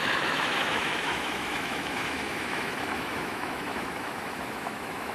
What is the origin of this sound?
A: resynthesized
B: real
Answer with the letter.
A